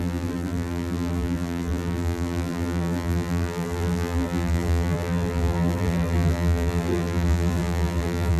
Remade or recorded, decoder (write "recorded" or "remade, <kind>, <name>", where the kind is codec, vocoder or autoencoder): remade, vocoder, BigVGAN v2